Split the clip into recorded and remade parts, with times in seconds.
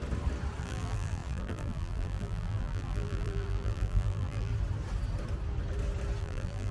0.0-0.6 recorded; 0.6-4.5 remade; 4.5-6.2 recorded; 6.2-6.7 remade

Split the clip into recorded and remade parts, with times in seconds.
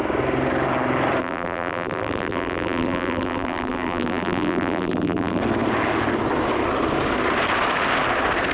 0.0-1.2 recorded; 1.2-5.4 remade; 5.4-8.5 recorded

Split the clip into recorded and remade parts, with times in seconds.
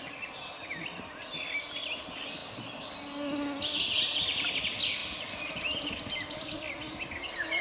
0.0-5.0 recorded; 5.0-5.9 remade; 5.9-7.6 recorded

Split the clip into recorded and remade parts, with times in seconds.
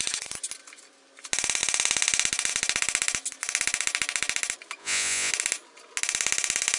0.0-4.8 recorded; 4.8-5.3 remade; 5.3-6.8 recorded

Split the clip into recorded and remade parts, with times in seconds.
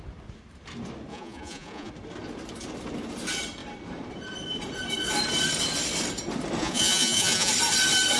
0.0-1.1 recorded; 1.1-1.9 remade; 1.9-6.6 recorded; 6.6-7.5 remade; 7.5-8.2 recorded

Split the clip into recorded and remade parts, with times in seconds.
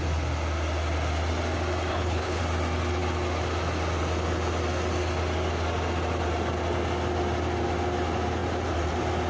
0.0-1.9 recorded; 1.9-2.4 remade; 2.4-9.3 recorded